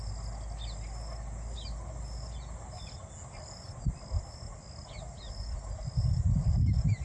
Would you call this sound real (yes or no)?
yes